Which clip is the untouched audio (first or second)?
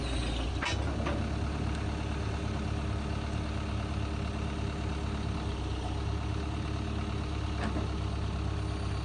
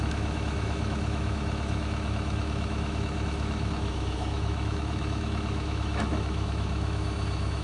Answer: first